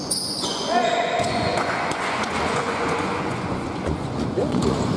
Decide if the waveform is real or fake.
fake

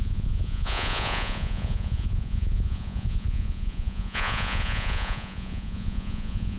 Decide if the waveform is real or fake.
fake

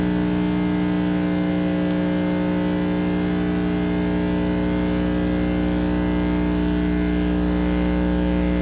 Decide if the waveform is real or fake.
real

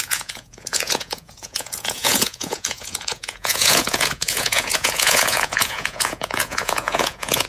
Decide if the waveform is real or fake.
fake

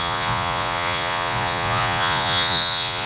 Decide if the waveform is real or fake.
fake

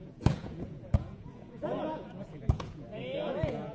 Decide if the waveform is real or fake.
fake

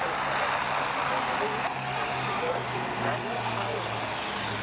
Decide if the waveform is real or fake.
real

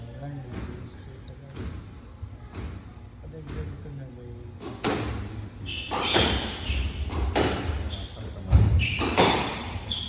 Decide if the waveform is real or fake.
real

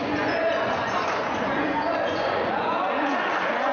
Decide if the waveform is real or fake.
fake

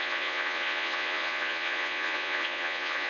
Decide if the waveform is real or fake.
fake